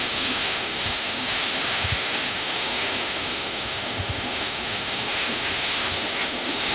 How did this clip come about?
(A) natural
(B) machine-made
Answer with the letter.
B